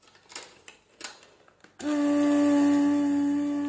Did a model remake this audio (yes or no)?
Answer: no